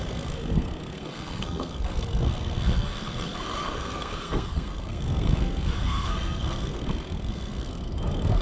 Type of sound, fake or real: fake